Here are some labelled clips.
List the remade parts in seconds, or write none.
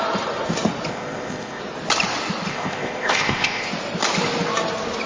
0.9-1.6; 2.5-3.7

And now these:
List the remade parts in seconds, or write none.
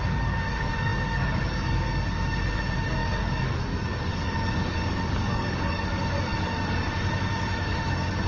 0.0-8.3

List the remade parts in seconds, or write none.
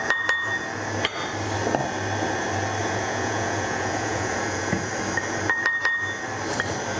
2.8-4.9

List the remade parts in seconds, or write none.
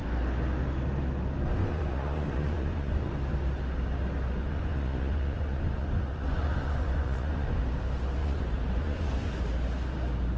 1.6-3.1; 4.4-7.6; 8.2-9.5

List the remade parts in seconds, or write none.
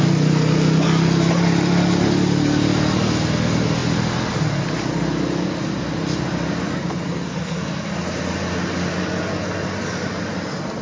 7.1-7.9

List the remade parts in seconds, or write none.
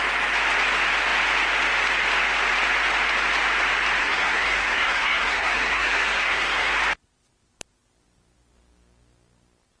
4.0-6.7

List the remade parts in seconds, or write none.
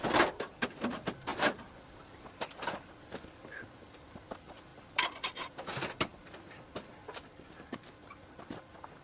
none